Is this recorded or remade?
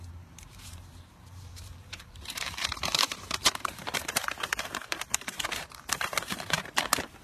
remade